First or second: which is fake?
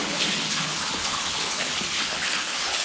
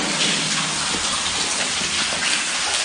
first